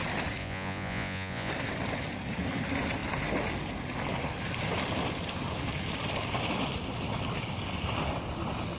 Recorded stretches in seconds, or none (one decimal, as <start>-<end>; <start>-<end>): 0.0-0.4; 1.5-8.8